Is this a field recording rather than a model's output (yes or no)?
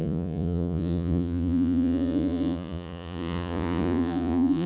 no